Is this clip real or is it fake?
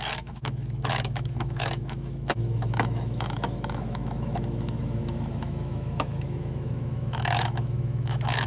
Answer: fake